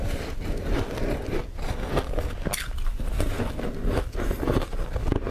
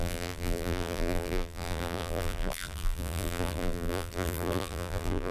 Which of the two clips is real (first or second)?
first